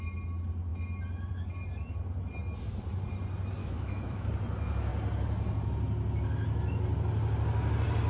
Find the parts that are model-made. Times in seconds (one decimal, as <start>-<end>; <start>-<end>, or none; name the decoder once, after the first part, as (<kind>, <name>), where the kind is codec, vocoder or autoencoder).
3.6-4.3 (autoencoder, DAC-VAE)